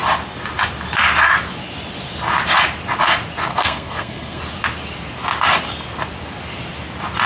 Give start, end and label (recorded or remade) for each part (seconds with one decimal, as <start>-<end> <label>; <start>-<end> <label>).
0.0-3.5 recorded; 3.5-4.4 remade; 4.4-7.3 recorded